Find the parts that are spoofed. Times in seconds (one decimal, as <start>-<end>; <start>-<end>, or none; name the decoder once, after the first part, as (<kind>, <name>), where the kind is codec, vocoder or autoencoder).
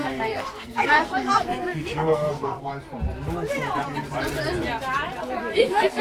0.0-2.7 (codec, SNAC); 5.5-6.0